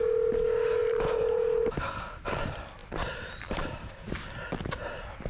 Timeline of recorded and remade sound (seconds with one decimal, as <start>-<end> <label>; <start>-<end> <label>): 0.0-0.8 recorded; 0.8-1.7 remade; 1.7-2.8 recorded; 2.8-3.4 remade; 3.4-5.3 recorded